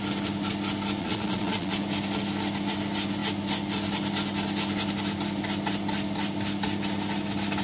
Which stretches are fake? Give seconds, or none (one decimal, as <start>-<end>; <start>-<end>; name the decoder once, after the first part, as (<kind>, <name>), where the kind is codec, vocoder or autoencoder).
1.0-1.7 (vocoder, Vocos)